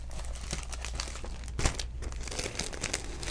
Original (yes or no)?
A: yes